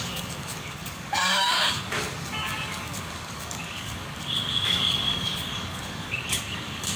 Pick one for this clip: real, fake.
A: fake